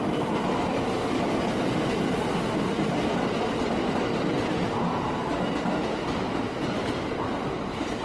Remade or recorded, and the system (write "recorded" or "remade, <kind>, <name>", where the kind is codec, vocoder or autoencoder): recorded